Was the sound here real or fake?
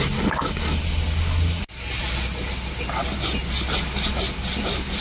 real